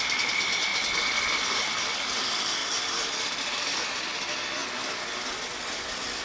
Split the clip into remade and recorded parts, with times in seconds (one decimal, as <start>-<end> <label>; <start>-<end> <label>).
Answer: 0.0-0.7 remade; 0.7-1.5 recorded; 1.5-2.6 remade; 2.6-3.4 recorded; 3.4-4.1 remade; 4.1-5.7 recorded; 5.7-6.2 remade